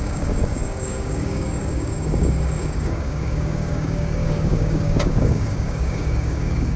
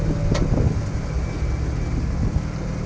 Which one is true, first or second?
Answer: second